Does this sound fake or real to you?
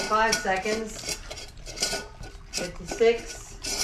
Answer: real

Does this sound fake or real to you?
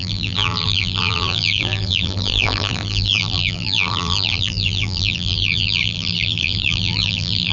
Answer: fake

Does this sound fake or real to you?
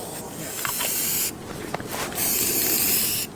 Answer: real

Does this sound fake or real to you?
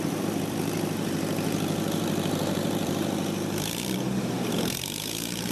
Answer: fake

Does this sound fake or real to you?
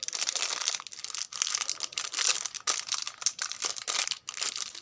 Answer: real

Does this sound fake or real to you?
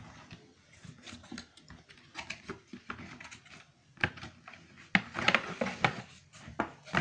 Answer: real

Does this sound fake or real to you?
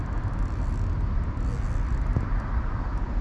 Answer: real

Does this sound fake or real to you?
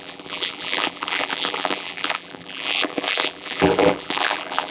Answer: fake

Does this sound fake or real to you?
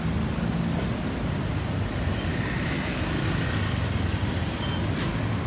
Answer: real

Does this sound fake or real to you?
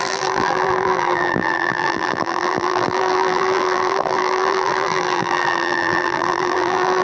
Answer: fake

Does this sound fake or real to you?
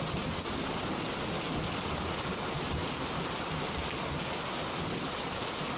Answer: real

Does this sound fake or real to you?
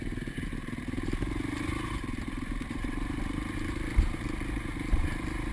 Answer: fake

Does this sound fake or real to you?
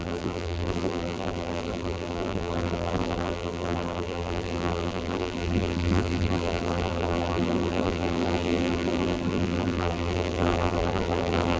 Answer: fake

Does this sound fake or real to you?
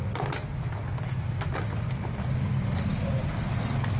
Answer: real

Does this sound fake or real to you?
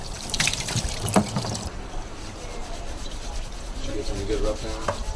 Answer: fake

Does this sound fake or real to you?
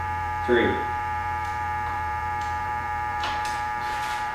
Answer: fake